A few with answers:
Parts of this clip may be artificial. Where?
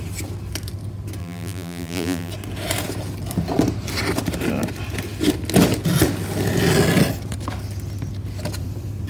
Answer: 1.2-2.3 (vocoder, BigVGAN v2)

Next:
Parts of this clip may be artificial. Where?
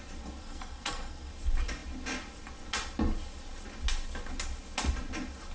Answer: 0.4-1.3 (codec, SNAC)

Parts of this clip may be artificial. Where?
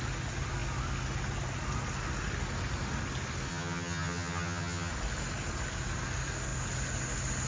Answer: 3.5-4.9 (vocoder, HiFi-GAN)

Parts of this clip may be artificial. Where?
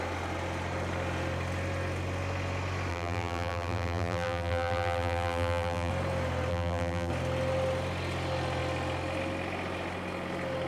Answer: 2.9-5.9 (vocoder, BigVGAN v2); 6.5-7.1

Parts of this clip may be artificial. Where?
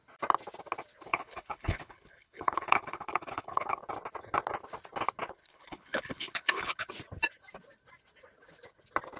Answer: 1.1-3.8 (codec, HILCodec); 5.4-6.9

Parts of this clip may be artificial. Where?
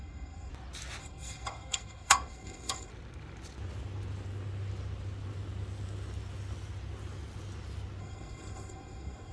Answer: 0.0-0.5 (codec, SNAC); 1.0-2.9; 8.0-9.3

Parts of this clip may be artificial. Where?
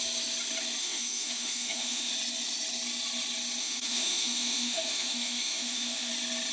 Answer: 0.8-2.1 (autoencoder, DAC-VAE); 3.6-6.1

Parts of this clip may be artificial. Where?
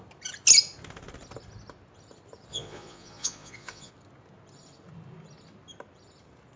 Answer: 2.5-3.9 (vocoder, Vocos)